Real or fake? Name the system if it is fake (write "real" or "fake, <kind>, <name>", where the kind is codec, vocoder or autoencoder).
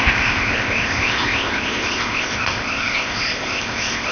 fake, codec, ZipCodec